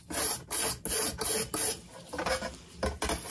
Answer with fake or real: real